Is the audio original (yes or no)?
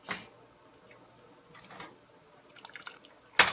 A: yes